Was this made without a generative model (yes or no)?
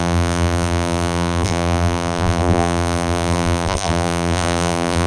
no